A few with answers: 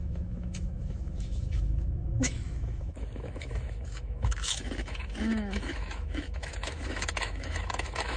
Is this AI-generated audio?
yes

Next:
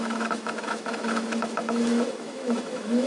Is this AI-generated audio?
yes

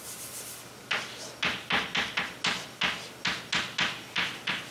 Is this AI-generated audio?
no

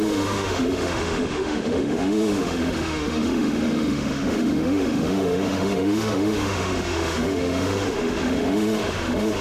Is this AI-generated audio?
yes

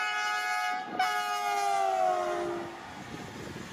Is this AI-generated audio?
no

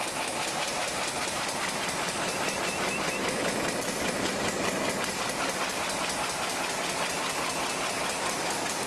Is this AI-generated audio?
no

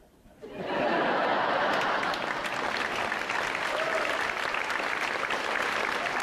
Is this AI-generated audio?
no